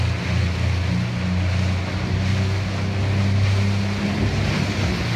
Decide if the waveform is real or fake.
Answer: real